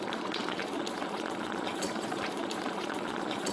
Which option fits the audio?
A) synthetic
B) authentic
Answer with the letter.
A